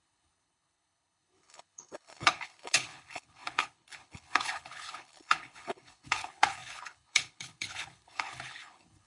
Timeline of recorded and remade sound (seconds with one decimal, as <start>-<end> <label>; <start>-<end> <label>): 0.0-9.1 remade